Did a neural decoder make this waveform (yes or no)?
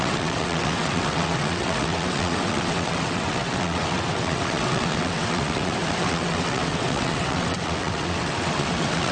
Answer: yes